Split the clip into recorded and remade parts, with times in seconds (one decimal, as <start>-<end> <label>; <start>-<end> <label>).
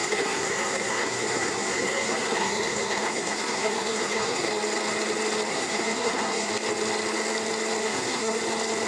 0.0-4.5 remade; 4.5-5.5 recorded; 5.5-6.5 remade; 6.5-7.8 recorded; 7.8-8.4 remade; 8.4-8.9 recorded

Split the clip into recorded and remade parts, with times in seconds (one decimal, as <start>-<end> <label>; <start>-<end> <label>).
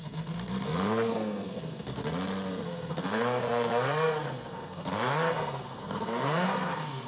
0.0-2.0 remade; 2.0-2.5 recorded; 2.5-7.1 remade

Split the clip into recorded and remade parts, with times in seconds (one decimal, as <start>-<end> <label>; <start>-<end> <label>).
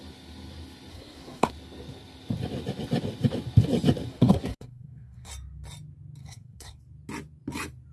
0.0-0.9 recorded; 0.9-1.5 remade; 1.5-4.1 recorded; 4.1-5.3 remade; 5.3-6.2 recorded; 6.2-6.8 remade; 6.8-7.9 recorded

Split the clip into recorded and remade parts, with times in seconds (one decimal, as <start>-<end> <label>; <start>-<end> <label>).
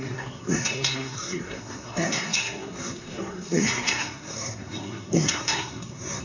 0.0-6.2 remade